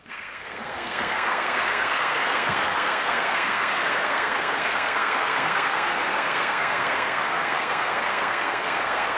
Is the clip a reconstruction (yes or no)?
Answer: yes